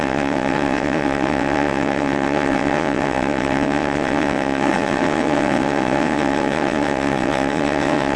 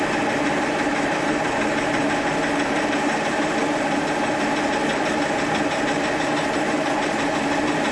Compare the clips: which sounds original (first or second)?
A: second